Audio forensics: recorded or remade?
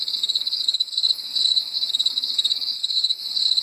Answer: remade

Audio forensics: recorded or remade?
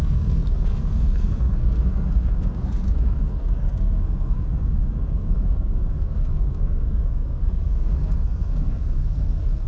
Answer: remade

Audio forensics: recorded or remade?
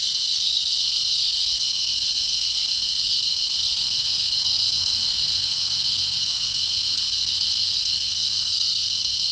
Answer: remade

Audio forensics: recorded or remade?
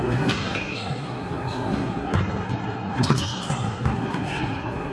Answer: remade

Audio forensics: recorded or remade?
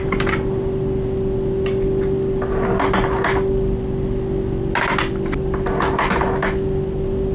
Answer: recorded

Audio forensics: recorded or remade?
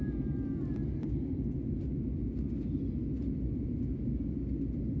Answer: recorded